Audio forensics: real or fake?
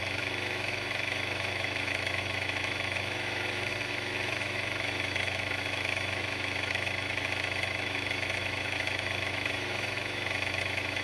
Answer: fake